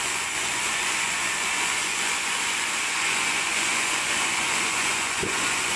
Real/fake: fake